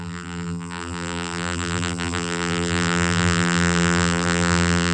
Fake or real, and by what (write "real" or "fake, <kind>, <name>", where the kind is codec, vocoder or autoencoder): fake, vocoder, BigVGAN v2